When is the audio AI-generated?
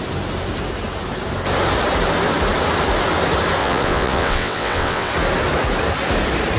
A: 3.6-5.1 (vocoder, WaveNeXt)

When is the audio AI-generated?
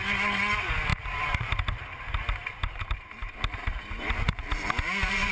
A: 0.9-1.8 (vocoder, BigVGAN v2); 2.4-5.3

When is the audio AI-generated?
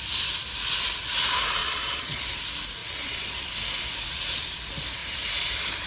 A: 1.6-2.2 (vocoder, WaveNeXt); 2.8-3.5